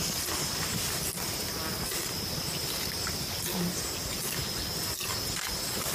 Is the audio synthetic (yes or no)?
no